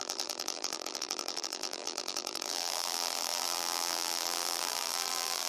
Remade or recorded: remade